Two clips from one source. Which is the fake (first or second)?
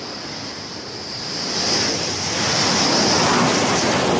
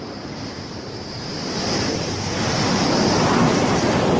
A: second